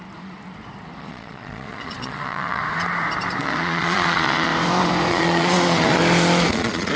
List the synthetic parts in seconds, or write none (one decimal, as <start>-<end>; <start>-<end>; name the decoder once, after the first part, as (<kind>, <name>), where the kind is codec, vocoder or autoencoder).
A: 1.0-2.6 (vocoder, Vocos); 3.4-4.5; 5.1-6.0; 6.5-7.0